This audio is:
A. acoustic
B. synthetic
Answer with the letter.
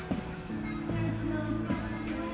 A